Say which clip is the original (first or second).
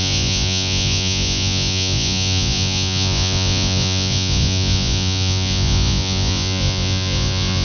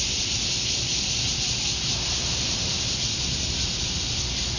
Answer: second